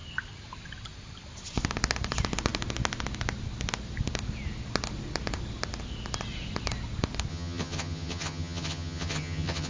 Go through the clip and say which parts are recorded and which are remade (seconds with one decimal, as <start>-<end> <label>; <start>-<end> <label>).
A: 0.0-7.3 recorded; 7.3-9.7 remade